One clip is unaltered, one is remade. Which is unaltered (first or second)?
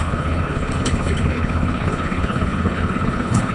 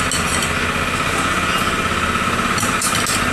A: second